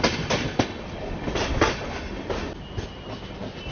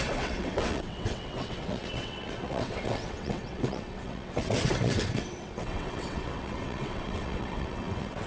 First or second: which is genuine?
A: first